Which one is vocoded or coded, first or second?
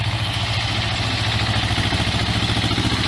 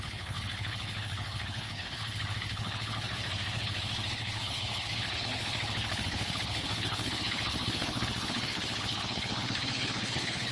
second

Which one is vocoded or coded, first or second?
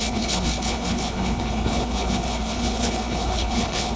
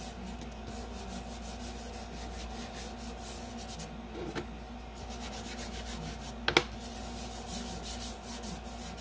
first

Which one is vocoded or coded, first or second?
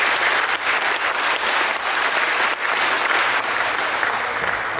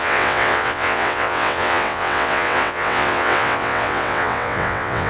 second